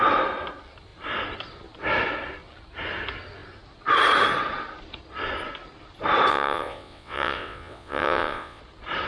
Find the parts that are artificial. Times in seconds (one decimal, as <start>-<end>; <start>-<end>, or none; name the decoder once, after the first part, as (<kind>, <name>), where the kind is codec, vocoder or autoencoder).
6.3-8.6 (vocoder, WaveNeXt)